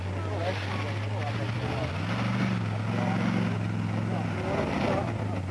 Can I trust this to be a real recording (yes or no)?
yes